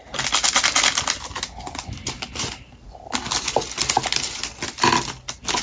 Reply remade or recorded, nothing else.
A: recorded